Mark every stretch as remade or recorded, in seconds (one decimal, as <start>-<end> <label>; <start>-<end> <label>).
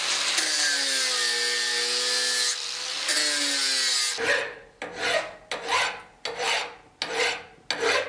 0.0-8.1 recorded